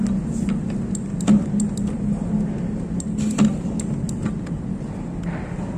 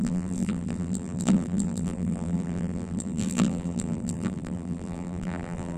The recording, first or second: first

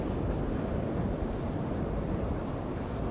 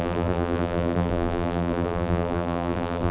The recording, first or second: first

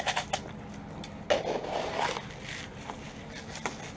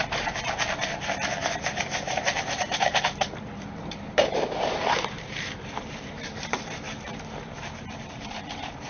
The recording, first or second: first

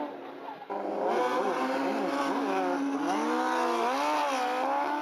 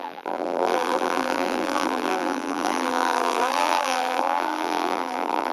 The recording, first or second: first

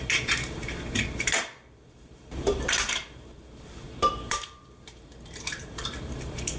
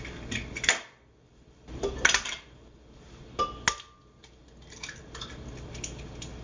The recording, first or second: second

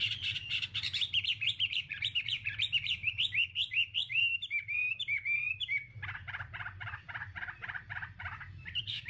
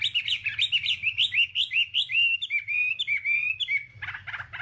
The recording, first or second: second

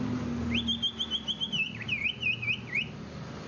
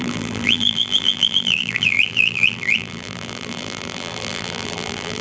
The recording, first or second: first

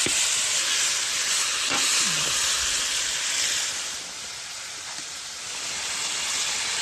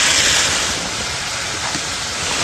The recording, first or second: second